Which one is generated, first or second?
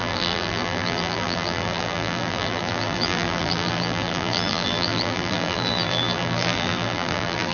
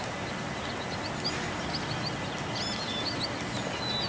first